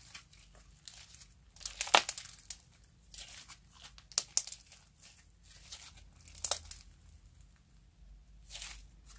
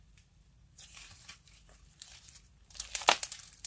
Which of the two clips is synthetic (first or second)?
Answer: second